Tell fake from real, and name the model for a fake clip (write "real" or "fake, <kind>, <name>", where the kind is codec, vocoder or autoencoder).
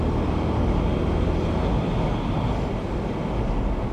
real